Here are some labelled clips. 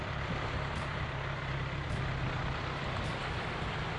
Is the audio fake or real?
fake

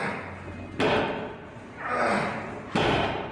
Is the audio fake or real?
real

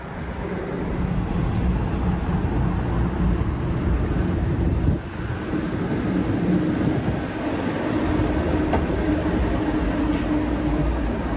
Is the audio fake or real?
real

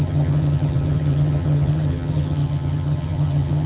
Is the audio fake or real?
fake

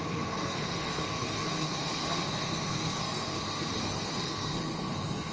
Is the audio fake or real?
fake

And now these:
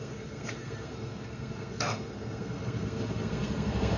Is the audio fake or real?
fake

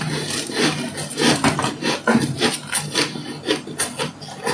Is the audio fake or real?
real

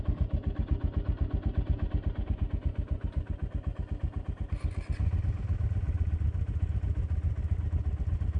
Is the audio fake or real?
real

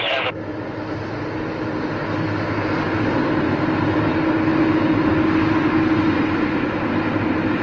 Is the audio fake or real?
real